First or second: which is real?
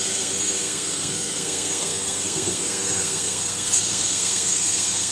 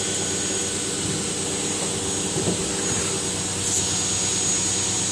second